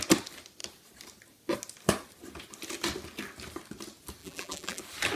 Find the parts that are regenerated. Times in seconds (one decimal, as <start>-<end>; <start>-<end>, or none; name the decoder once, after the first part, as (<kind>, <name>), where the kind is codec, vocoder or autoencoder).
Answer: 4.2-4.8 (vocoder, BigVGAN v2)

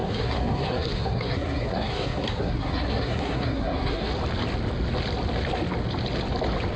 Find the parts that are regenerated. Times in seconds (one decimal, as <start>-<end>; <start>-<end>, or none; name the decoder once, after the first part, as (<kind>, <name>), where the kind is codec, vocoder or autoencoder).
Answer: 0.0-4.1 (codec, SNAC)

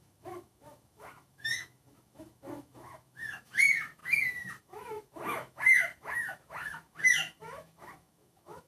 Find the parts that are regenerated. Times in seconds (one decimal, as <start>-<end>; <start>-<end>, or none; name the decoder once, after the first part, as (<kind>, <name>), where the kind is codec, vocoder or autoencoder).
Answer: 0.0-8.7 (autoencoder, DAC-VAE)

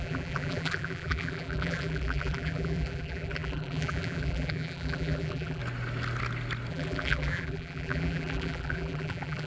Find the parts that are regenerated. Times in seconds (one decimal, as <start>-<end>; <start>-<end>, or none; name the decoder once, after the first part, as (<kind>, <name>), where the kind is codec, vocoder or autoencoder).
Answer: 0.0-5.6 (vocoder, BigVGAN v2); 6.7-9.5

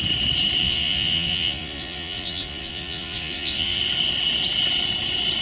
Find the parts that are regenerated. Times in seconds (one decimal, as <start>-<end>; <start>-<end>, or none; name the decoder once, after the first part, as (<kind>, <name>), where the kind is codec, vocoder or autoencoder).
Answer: 0.6-3.8 (vocoder, Vocos)

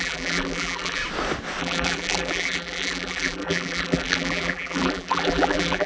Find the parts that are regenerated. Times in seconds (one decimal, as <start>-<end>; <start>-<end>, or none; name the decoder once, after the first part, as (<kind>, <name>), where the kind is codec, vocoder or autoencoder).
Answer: 0.0-1.0 (vocoder, BigVGAN v2); 1.6-5.9

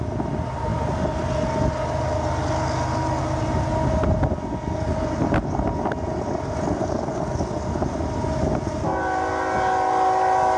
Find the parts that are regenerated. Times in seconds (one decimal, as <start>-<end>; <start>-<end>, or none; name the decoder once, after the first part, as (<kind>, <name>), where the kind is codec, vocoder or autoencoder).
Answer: none